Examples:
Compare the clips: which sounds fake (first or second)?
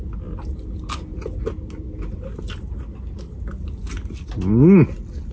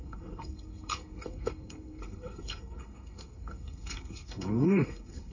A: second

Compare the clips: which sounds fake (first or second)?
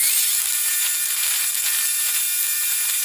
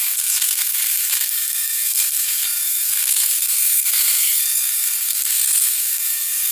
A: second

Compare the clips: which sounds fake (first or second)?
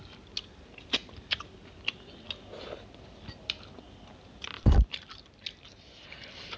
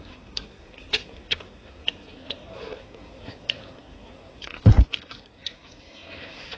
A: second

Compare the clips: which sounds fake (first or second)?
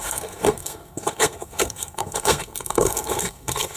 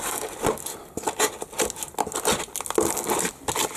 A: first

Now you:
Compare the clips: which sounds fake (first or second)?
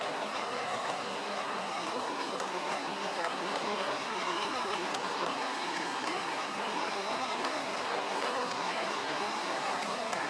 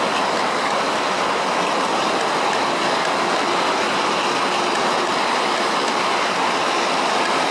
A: first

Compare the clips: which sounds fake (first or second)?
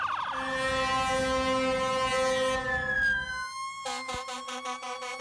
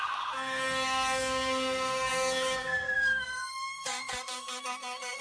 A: second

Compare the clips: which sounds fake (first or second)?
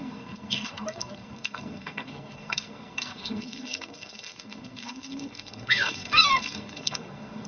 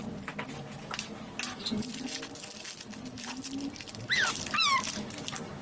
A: first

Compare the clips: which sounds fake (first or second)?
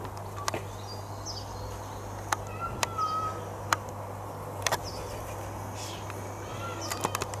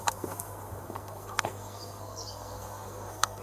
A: second